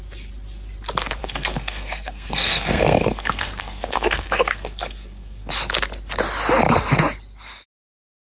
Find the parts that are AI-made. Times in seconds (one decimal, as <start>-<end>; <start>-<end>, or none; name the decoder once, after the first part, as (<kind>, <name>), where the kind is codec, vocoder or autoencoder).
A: 1.2-5.5 (codec, SNAC)